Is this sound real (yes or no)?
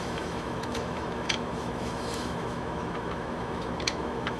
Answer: no